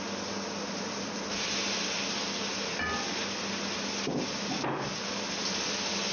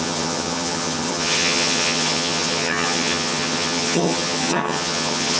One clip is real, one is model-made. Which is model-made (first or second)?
second